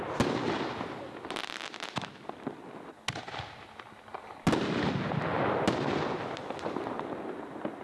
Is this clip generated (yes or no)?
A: no